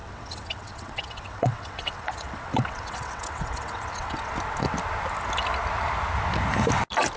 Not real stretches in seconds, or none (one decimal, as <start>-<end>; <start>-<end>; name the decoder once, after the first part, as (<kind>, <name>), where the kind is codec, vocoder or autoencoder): 0.0-4.3 (vocoder, WaveNeXt)